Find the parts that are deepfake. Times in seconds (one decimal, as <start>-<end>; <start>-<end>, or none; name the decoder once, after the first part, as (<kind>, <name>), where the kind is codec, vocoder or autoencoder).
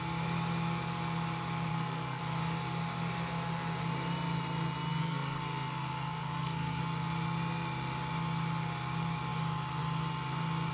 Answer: 1.7-2.2 (codec, SNAC); 5.0-6.8